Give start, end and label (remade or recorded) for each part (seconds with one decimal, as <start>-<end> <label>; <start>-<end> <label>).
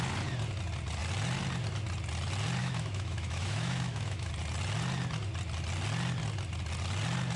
0.0-2.6 recorded; 2.6-4.3 remade; 4.3-7.4 recorded